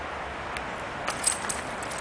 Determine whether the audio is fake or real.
real